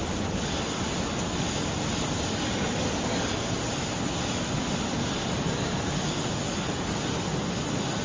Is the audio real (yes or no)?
yes